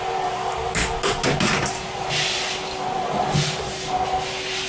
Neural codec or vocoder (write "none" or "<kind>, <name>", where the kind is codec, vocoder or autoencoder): none